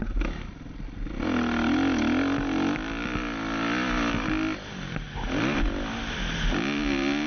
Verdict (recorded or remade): recorded